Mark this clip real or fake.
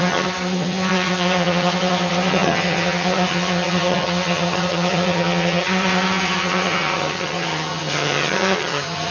fake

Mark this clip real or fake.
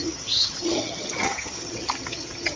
fake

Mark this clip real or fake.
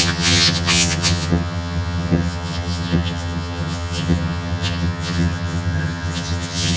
fake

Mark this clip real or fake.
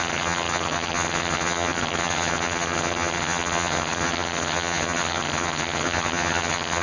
fake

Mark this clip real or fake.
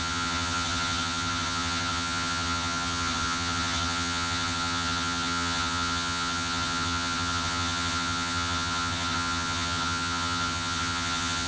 fake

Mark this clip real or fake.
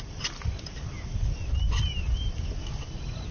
real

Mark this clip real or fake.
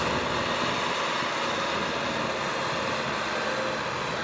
real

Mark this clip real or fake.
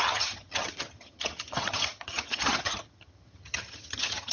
fake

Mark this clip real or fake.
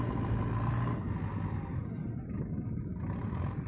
real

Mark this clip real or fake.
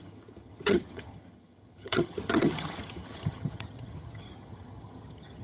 fake